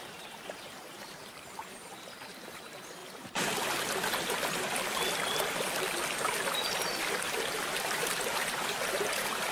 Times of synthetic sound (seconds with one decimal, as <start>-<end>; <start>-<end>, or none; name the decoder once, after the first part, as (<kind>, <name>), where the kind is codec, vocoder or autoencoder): 0.0-3.0 (vocoder, BigVGAN v2); 7.1-9.5